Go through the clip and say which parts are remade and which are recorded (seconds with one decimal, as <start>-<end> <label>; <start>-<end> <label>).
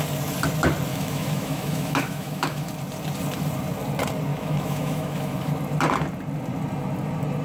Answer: 0.0-0.9 recorded; 0.9-2.7 remade; 2.7-4.3 recorded; 4.3-5.5 remade; 5.5-7.4 recorded